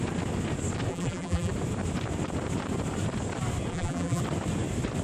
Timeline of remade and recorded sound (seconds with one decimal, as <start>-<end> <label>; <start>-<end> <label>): 0.0-0.9 recorded; 0.9-1.5 remade; 1.5-3.7 recorded; 3.7-4.2 remade; 4.2-5.0 recorded